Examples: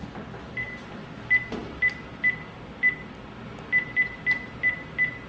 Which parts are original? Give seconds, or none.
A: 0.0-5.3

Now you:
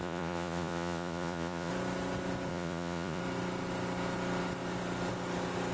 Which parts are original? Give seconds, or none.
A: 1.7-2.5; 3.2-5.7